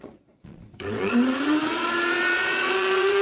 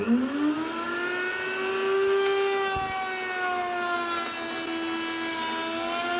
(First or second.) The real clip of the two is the second